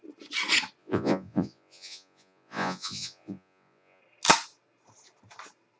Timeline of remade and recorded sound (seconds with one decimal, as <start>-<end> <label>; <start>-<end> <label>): 0.0-0.8 recorded; 0.8-4.0 remade; 4.0-5.8 recorded